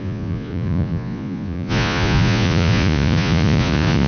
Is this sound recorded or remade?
remade